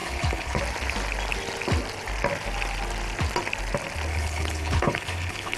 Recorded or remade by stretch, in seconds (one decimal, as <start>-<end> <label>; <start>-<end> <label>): 0.0-0.6 remade; 0.6-4.1 recorded; 4.1-5.6 remade